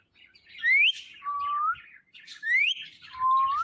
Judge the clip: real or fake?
real